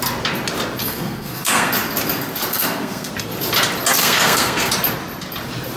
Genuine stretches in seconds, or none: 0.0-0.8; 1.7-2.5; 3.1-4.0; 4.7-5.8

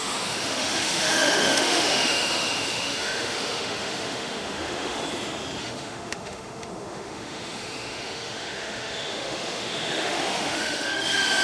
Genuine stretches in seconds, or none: 5.0-5.6